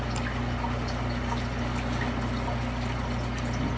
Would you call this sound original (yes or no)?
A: yes